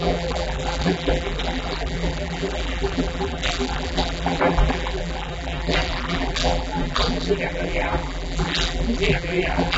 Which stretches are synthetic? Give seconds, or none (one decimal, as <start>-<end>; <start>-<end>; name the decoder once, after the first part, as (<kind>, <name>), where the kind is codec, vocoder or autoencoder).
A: 0.0-9.8 (vocoder, BigVGAN v2)

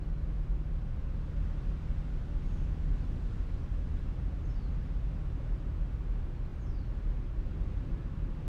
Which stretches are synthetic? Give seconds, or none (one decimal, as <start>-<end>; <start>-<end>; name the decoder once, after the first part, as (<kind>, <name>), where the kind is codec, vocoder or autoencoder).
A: none

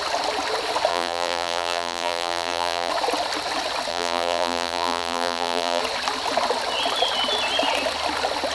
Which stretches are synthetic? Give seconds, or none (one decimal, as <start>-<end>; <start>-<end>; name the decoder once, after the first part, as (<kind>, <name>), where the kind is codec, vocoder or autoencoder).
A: 0.9-2.9 (vocoder, BigVGAN v2); 3.9-5.8

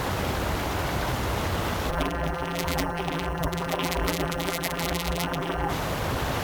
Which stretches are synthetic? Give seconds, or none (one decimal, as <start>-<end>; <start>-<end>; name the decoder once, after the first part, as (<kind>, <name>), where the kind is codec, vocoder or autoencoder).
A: 1.9-5.7 (vocoder, BigVGAN v2)